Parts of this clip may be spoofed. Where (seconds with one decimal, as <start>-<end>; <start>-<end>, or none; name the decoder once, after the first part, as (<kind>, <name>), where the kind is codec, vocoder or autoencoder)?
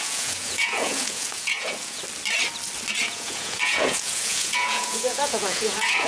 0.0-2.0 (vocoder, Vocos); 3.0-6.1